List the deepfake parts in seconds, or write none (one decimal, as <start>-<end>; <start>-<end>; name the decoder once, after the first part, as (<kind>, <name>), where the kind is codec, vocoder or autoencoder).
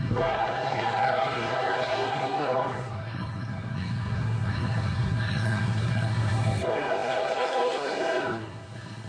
0.0-9.1 (codec, SNAC)